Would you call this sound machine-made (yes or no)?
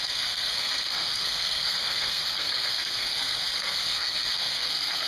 yes